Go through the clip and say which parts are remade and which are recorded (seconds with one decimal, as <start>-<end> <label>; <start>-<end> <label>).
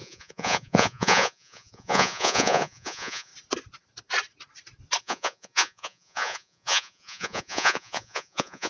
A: 0.0-3.3 remade; 3.3-5.0 recorded; 5.0-8.7 remade